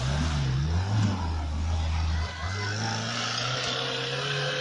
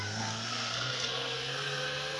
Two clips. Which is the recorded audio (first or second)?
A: first